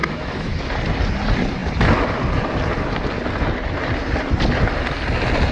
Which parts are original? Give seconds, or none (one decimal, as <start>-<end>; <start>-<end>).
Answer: 0.6-5.5